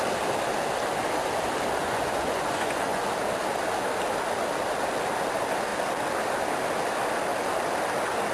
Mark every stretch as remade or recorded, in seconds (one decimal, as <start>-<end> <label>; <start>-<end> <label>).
0.0-1.8 recorded; 1.8-3.0 remade; 3.0-8.3 recorded